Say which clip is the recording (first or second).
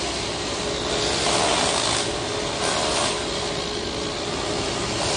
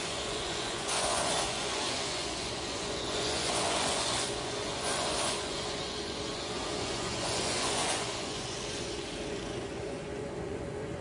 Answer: first